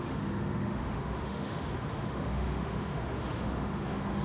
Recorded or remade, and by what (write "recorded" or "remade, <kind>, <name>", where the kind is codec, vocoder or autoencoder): remade, autoencoder, DAC-VAE